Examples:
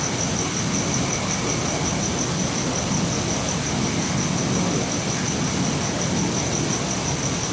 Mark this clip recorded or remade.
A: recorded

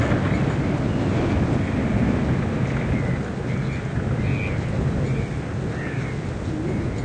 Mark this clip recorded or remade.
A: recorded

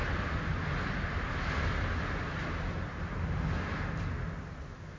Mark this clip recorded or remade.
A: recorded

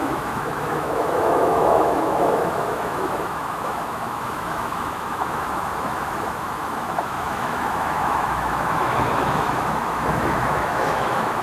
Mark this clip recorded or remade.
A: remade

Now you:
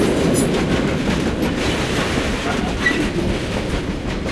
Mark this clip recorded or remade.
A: recorded